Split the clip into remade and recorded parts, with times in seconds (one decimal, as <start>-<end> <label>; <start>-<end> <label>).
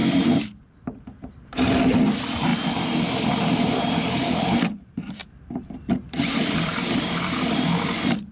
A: 0.0-2.5 remade; 2.5-3.3 recorded; 3.3-5.2 remade; 5.2-6.4 recorded; 6.4-8.3 remade